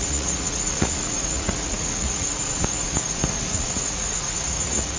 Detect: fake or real fake